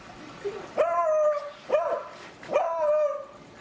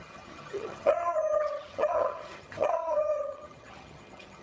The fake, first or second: second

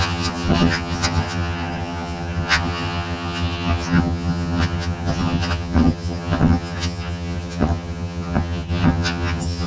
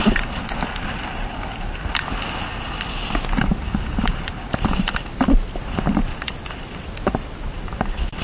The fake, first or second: first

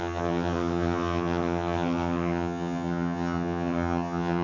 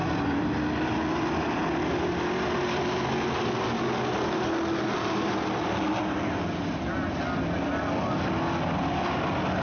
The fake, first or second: first